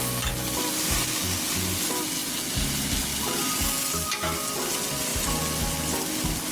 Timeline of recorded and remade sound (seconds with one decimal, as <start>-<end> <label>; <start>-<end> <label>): 0.0-6.5 recorded